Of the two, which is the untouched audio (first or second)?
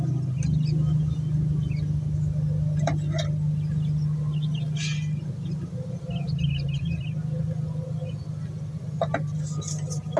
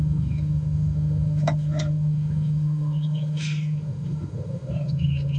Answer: first